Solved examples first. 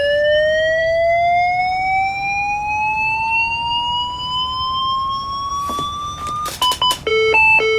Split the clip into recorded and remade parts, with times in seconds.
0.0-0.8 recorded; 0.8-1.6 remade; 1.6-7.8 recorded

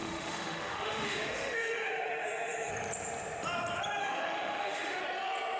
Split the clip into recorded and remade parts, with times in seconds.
0.0-2.7 remade; 2.7-4.0 recorded; 4.0-5.0 remade; 5.0-5.6 recorded

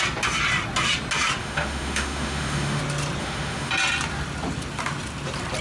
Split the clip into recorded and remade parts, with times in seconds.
0.0-1.4 recorded; 1.4-2.8 remade; 2.8-3.2 recorded; 3.2-3.7 remade; 3.7-5.6 recorded

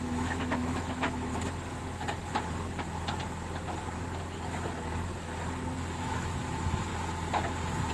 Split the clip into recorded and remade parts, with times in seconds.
0.0-1.3 remade; 1.3-6.0 recorded; 6.0-6.9 remade; 6.9-7.9 recorded

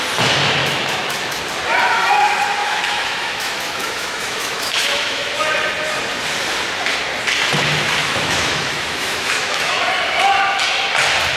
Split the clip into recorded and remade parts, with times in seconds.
0.0-0.6 recorded; 0.6-1.4 remade; 1.4-2.6 recorded; 2.6-5.5 remade; 5.5-8.0 recorded; 8.0-9.9 remade; 9.9-11.4 recorded

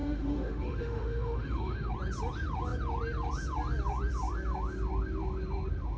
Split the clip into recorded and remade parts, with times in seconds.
0.0-1.9 remade; 1.9-6.0 recorded

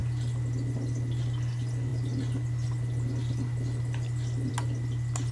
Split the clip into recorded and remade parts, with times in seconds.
0.0-5.3 recorded